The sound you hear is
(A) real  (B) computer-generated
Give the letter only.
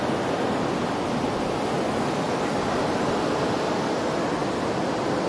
A